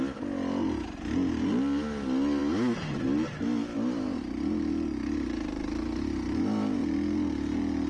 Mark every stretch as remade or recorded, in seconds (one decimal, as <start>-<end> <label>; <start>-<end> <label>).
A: 0.0-7.9 recorded